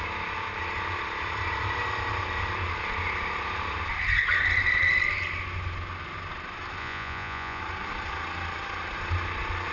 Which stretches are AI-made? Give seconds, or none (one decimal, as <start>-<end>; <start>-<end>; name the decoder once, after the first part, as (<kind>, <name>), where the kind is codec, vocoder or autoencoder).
6.8-7.6 (vocoder, Vocos)